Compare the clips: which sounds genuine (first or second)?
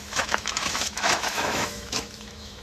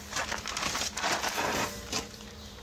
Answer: second